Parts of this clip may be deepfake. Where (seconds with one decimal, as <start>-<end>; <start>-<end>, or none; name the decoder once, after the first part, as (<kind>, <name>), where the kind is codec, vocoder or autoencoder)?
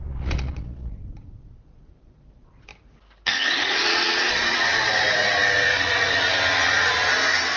0.0-2.7 (vocoder, Vocos); 3.6-7.6